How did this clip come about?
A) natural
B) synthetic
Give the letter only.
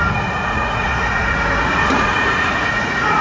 B